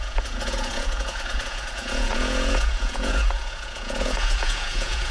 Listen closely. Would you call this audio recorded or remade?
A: remade